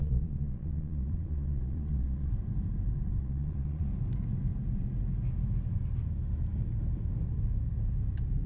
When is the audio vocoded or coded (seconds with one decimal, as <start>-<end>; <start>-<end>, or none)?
0.0-2.3; 3.2-3.9